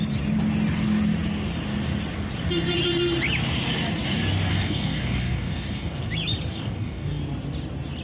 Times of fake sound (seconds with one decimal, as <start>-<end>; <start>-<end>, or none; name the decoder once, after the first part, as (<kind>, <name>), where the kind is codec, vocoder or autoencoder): 4.5-6.0 (codec, DAC); 6.5-7.2